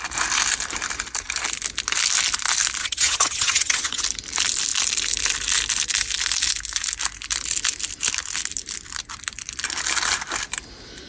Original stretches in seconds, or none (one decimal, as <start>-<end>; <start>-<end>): 0.0-2.8; 4.0-11.1